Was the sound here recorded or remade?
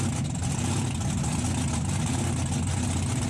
recorded